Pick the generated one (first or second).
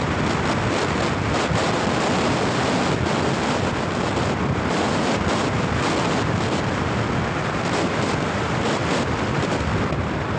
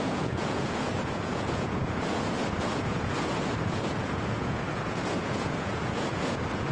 second